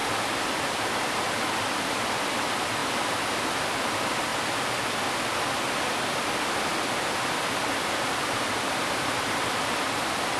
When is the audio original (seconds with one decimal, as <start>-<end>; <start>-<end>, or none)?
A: 0.0-0.6; 4.3-8.1